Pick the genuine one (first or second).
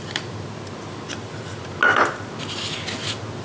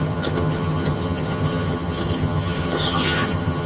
first